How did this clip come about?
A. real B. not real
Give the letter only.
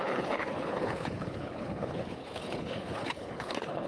B